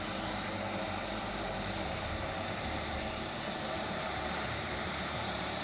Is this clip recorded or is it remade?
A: remade